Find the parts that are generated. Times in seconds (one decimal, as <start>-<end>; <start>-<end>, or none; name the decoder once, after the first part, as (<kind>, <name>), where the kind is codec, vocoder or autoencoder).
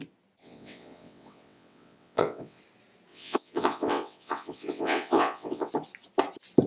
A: 0.4-2.6 (vocoder, WaveNeXt); 3.1-5.7